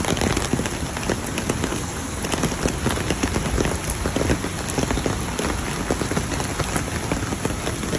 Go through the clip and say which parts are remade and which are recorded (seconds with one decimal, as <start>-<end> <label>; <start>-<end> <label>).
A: 0.0-1.7 recorded; 1.7-2.2 remade; 2.2-8.0 recorded